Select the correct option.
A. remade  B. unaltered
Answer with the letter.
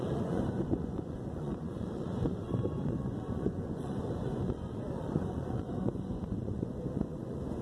A